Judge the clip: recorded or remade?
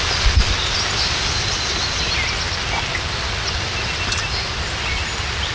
recorded